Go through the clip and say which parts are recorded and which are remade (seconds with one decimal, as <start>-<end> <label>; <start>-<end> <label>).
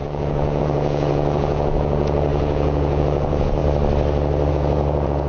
0.0-3.6 remade; 3.6-4.5 recorded; 4.5-5.3 remade